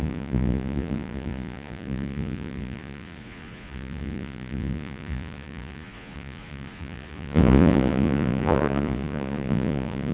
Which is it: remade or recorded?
remade